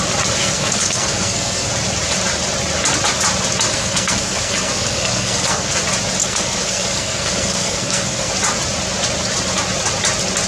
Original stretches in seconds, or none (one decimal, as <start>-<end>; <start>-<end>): 0.0-0.4; 1.7-3.7; 5.8-6.2; 8.3-10.5